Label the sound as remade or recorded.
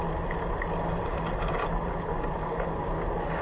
recorded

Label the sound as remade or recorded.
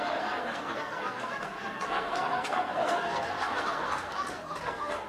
remade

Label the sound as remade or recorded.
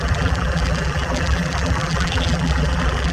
remade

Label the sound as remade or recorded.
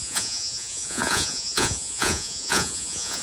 remade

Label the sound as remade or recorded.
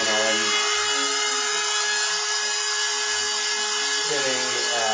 recorded